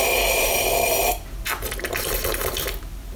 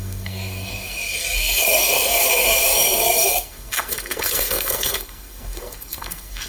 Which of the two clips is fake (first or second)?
second